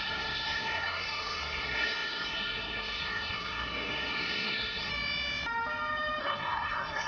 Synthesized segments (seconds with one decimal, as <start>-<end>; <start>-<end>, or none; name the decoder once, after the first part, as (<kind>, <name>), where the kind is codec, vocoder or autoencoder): 0.0-4.9 (codec, SNAC); 6.2-7.1